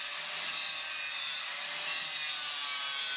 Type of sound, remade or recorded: recorded